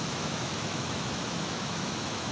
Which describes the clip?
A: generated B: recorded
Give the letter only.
A